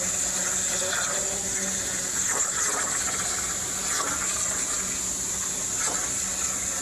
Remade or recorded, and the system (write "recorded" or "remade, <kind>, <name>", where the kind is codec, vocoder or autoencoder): recorded